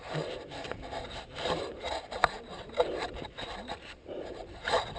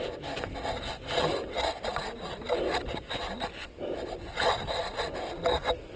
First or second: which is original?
second